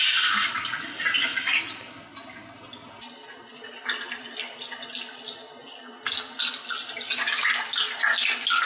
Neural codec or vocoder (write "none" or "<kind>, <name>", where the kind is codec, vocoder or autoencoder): none